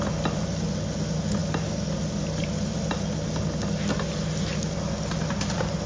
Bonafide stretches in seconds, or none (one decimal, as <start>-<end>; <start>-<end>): 0.0-5.9